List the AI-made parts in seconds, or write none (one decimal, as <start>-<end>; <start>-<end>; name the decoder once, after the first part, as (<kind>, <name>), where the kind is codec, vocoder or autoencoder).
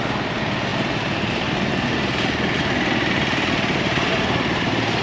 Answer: 3.7-5.0 (vocoder, BigVGAN v2)